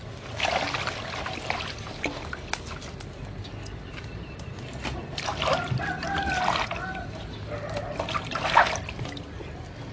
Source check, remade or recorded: recorded